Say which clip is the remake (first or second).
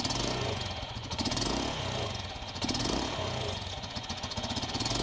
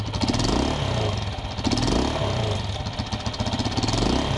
first